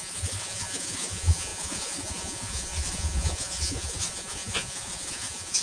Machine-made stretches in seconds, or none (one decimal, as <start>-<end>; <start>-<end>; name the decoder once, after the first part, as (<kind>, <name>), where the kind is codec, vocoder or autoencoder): 0.0-5.6 (vocoder, Vocos)